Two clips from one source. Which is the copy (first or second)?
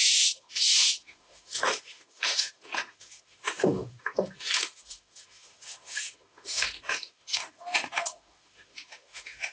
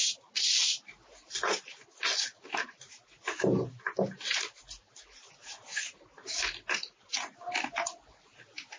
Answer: first